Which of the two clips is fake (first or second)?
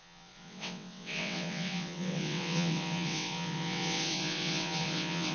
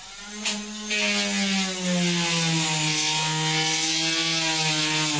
first